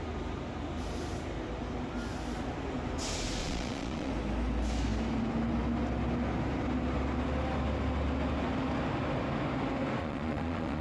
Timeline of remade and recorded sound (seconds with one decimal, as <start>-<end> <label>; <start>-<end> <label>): 0.0-3.4 recorded; 3.4-4.1 remade; 4.1-10.0 recorded; 10.0-10.8 remade